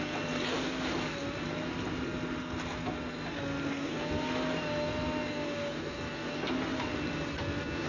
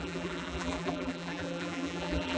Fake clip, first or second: second